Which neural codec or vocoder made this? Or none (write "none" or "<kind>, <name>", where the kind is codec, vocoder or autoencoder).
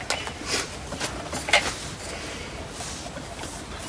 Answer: none